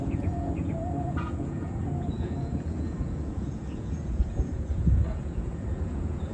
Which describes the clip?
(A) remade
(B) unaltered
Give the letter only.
A